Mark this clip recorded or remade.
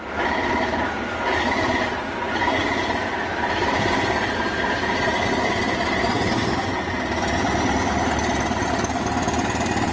recorded